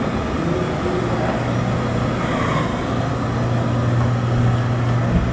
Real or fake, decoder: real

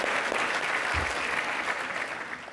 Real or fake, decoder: real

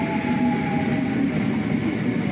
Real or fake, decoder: real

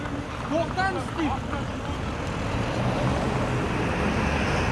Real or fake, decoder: real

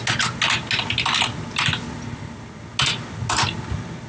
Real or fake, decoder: real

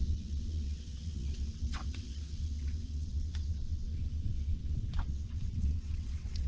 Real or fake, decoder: fake, vocoder, WaveNeXt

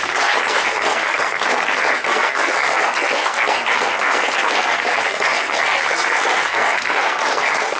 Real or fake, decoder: fake, codec, SNAC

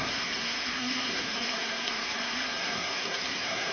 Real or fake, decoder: fake, codec, SNAC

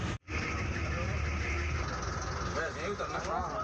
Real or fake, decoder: real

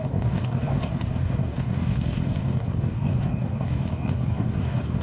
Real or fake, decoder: fake, codec, DAC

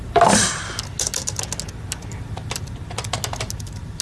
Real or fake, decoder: real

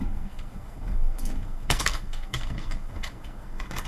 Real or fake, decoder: fake, codec, SNAC